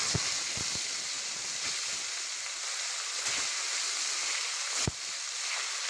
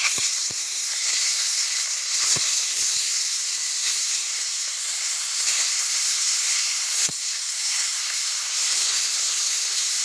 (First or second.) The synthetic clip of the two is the second